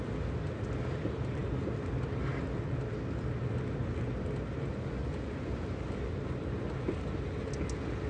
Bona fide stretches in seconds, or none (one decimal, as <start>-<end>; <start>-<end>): 0.0-8.1

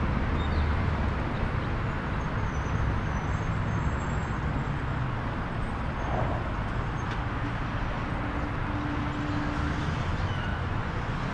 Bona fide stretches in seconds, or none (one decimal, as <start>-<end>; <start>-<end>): 0.0-10.5

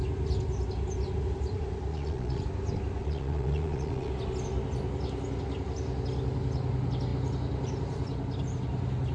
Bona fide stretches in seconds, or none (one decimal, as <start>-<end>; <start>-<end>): 0.0-1.9; 2.4-3.0; 4.1-9.1

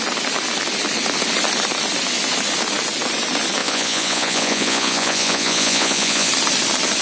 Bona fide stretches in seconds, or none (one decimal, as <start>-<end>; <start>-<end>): 0.0-3.6; 6.3-7.0

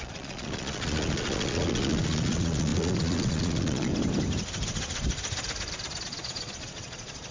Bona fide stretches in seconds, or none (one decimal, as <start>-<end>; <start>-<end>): 3.9-6.0